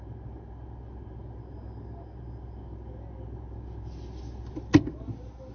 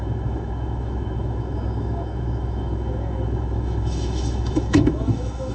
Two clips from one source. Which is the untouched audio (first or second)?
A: first